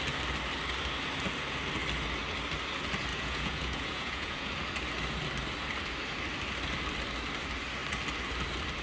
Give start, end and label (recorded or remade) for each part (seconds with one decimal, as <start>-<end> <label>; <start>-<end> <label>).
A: 0.0-3.1 recorded; 3.1-4.5 remade; 4.5-8.8 recorded